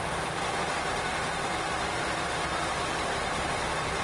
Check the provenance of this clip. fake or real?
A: real